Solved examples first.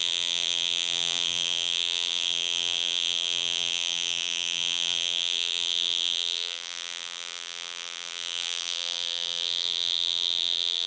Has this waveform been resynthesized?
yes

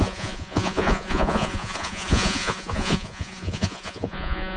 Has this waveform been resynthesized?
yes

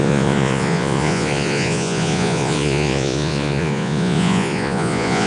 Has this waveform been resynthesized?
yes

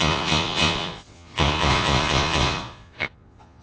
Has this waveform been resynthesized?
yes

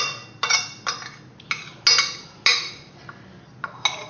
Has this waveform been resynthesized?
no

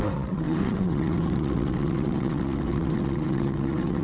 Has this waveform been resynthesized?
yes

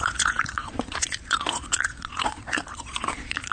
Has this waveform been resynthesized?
yes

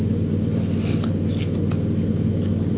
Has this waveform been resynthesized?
no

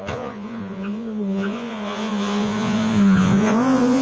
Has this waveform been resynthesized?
yes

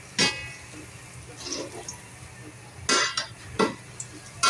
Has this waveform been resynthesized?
no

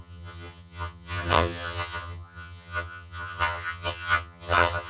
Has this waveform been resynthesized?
yes